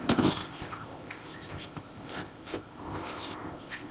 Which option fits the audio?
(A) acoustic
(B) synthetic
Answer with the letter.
B